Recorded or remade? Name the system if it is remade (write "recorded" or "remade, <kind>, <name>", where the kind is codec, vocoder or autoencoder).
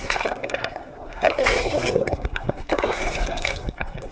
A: remade, codec, SNAC